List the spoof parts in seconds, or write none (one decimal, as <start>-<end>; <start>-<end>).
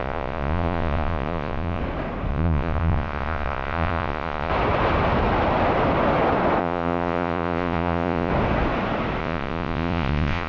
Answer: 0.0-1.8; 2.3-4.5; 6.6-8.3; 9.2-10.5